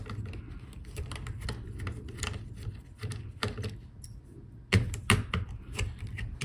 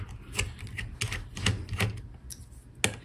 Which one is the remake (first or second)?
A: first